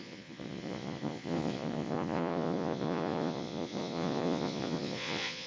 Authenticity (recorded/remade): remade